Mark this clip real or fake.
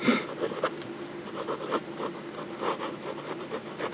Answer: fake